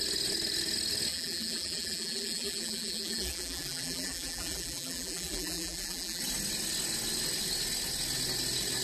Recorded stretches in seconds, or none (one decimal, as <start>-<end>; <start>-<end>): 0.0-1.1; 6.2-8.8

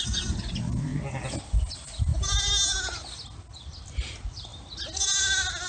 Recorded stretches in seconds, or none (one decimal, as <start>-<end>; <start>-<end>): 0.9-1.7; 2.1-3.9; 4.5-5.7